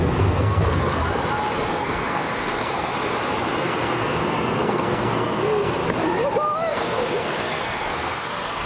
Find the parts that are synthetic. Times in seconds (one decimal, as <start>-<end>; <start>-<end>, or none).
0.0-1.0; 1.7-2.9; 3.6-5.8; 6.7-8.7

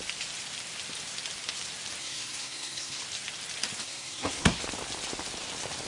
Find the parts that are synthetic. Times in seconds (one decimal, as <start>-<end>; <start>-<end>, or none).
2.0-3.0; 3.8-4.6

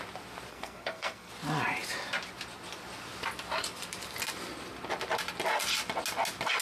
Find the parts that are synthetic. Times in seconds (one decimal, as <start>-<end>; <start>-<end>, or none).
0.5-1.3